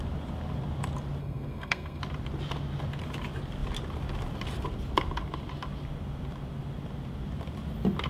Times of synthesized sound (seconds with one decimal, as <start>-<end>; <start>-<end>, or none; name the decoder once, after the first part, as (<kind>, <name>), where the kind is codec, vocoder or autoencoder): 1.2-2.0 (codec, SNAC)